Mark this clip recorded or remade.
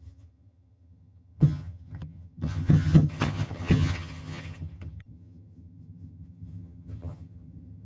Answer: remade